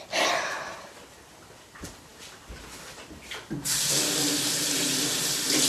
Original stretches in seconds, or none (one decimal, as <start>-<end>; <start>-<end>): 0.0-5.7